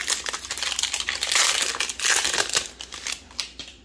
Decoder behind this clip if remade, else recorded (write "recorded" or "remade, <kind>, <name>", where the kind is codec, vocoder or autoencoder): remade, vocoder, BigVGAN v2